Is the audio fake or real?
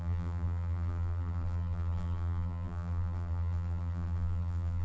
fake